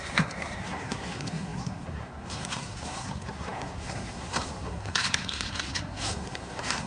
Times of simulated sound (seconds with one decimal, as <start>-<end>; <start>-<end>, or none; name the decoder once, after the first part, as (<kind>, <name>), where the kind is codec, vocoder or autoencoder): 0.0-6.9 (codec, SNAC)